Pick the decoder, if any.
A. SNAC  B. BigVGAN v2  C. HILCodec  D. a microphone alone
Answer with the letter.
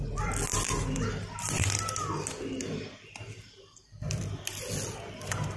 D